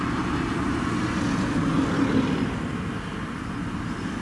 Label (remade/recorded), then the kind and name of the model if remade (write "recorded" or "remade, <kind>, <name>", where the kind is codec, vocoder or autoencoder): recorded